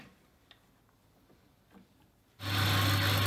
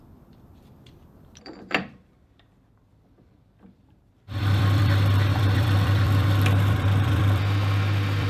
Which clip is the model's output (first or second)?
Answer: second